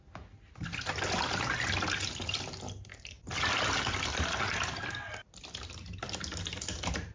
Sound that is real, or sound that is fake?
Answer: real